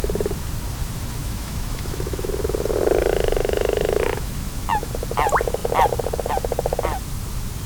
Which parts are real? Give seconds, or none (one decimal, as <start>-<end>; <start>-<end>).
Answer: 0.0-1.2; 2.3-3.4; 4.9-7.7